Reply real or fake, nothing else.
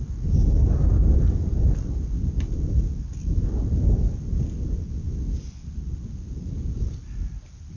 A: real